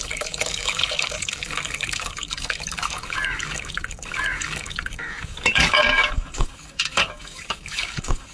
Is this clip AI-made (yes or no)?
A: yes